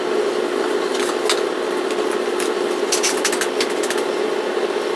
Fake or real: real